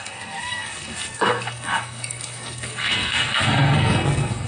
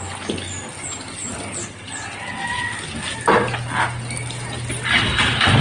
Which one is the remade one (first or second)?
first